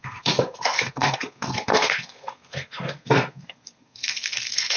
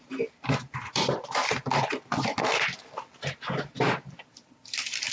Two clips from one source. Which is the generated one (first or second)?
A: first